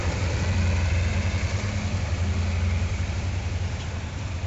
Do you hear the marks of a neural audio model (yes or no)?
yes